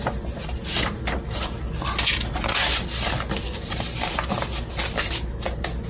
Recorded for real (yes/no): yes